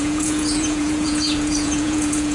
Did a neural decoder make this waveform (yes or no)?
yes